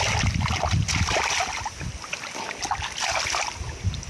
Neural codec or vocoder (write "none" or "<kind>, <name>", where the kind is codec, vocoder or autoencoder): none